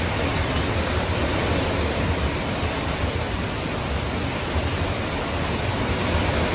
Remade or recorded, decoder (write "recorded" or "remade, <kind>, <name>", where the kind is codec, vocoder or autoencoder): remade, vocoder, BigVGAN v2